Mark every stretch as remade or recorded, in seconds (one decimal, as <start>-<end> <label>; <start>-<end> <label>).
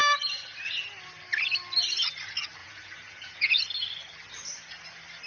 0.0-2.6 recorded; 2.6-3.6 remade; 3.6-5.3 recorded